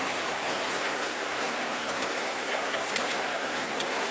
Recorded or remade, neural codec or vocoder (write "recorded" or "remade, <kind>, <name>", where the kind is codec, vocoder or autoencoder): remade, codec, SNAC